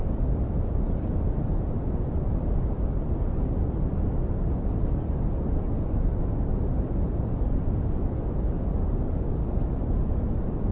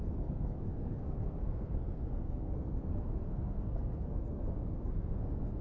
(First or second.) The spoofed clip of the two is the second